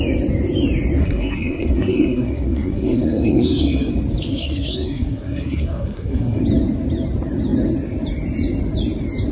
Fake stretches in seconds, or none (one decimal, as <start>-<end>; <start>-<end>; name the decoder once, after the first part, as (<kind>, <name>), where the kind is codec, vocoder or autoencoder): 1.0-3.9 (codec, SNAC); 4.3-6.4